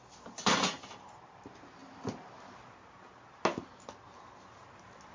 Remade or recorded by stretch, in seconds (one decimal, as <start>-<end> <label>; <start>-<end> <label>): 0.0-5.1 recorded